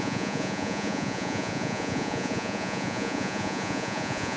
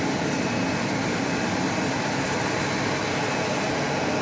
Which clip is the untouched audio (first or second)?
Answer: second